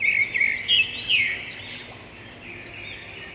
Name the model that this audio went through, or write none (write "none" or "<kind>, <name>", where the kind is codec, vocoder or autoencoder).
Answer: none